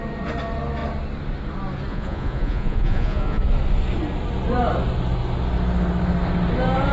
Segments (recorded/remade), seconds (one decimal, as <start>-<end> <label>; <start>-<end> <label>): 0.0-1.9 recorded; 1.9-3.4 remade; 3.4-6.9 recorded